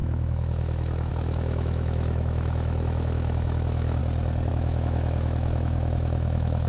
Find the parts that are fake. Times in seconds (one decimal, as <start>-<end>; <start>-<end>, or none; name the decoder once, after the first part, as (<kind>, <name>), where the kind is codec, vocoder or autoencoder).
0.0-4.0 (autoencoder, DAC-VAE); 4.5-6.7